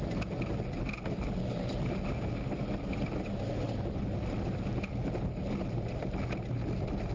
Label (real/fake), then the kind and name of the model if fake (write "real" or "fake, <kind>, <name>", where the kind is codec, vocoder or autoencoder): real